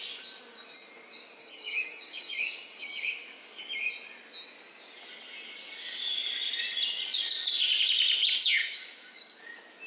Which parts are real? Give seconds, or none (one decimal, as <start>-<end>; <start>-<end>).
0.0-1.4; 3.6-8.6; 9.4-9.9